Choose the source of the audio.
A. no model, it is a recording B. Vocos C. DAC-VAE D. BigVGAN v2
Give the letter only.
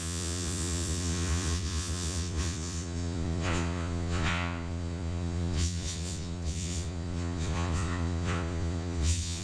B